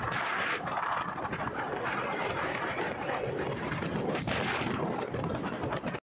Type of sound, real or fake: real